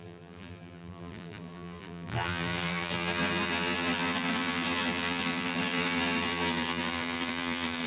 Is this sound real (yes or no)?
no